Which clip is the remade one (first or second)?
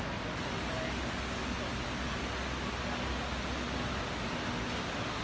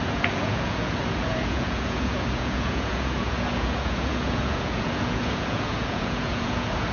second